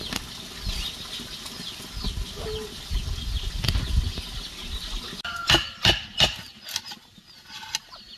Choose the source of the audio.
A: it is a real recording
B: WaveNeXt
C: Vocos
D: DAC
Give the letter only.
A